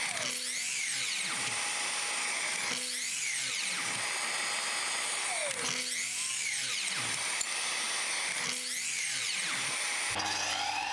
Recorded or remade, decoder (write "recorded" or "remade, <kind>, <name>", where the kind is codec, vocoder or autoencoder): recorded